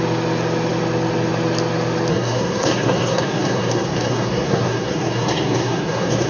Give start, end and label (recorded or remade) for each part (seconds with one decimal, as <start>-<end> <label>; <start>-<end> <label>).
0.0-2.1 recorded; 2.1-6.3 remade